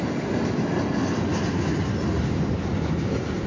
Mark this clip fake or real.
real